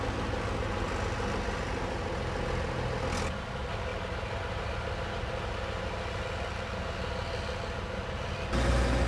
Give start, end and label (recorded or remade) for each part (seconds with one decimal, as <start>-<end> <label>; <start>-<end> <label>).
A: 0.0-9.1 recorded